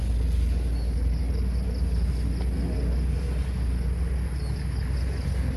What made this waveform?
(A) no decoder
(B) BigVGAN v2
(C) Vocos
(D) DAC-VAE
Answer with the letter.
A